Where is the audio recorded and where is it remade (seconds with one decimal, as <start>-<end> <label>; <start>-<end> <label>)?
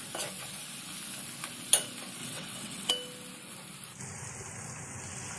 0.0-2.2 recorded; 2.2-2.9 remade; 2.9-5.4 recorded